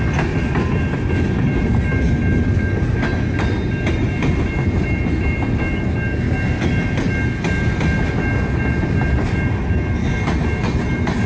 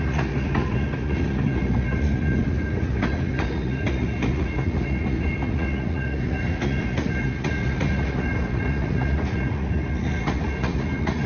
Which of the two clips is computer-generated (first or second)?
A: second